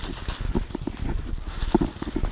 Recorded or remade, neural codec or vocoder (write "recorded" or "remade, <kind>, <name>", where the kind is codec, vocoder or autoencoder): recorded